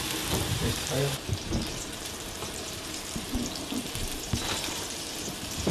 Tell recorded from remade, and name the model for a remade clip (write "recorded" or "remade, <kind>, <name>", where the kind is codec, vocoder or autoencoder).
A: remade, vocoder, BigVGAN v2